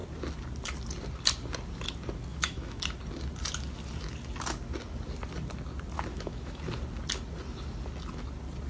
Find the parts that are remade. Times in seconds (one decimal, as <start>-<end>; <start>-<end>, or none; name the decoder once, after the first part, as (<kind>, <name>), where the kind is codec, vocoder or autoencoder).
2.3-2.8 (autoencoder, DAC-VAE); 6.1-6.6